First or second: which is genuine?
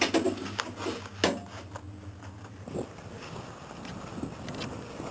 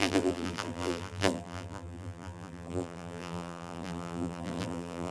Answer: first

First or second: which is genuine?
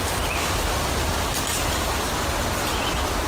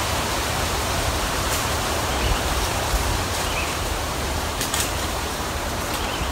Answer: first